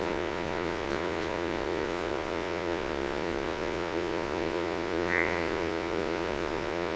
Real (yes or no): no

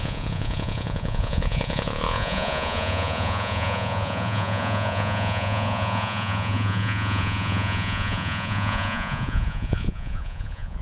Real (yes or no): no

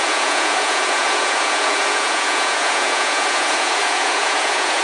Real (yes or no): no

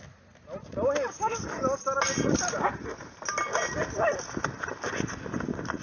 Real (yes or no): yes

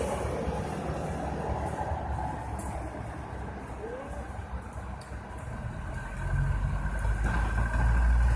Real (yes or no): yes